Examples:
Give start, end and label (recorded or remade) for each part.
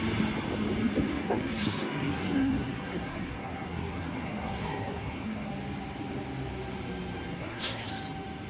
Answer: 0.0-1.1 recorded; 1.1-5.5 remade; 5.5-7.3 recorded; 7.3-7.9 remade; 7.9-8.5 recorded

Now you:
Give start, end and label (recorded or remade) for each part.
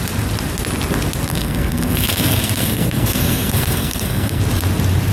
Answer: 0.0-1.3 recorded; 1.3-4.4 remade; 4.4-5.1 recorded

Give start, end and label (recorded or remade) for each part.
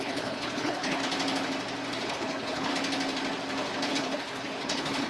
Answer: 0.0-1.0 remade; 1.0-2.1 recorded; 2.1-2.7 remade; 2.7-3.9 recorded; 3.9-5.1 remade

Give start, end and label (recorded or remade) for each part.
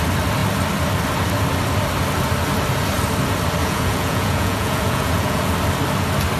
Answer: 0.0-3.6 recorded; 3.6-5.5 remade; 5.5-6.4 recorded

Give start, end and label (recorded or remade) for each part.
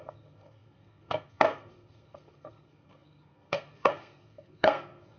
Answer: 0.0-5.2 remade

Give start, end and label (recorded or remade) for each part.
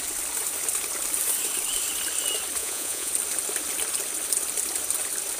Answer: 0.0-2.6 recorded; 2.6-3.1 remade; 3.1-5.4 recorded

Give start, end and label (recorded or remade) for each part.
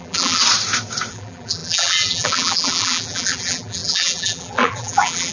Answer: 0.0-0.4 remade; 0.4-1.1 recorded; 1.1-5.3 remade